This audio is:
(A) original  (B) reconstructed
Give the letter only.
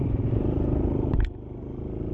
B